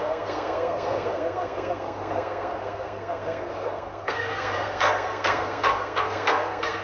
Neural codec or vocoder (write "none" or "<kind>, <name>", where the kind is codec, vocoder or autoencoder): codec, SNAC